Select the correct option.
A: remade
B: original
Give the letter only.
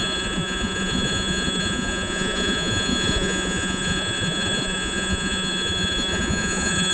A